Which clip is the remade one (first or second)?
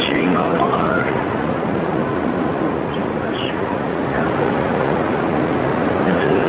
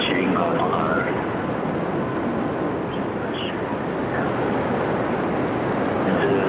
first